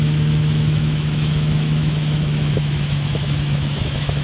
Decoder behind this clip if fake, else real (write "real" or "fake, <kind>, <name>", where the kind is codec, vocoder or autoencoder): fake, autoencoder, DAC-VAE